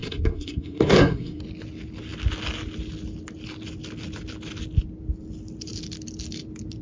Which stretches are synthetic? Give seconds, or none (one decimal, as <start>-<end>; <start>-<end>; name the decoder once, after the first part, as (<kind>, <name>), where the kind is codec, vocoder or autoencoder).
0.0-1.4 (codec, SNAC)